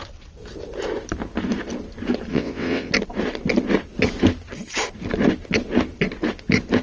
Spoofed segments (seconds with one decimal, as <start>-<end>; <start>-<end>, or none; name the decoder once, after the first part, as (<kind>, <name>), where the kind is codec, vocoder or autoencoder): 2.3-2.9 (vocoder, WaveNeXt)